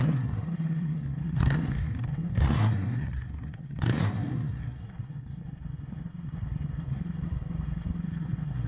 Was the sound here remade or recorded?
remade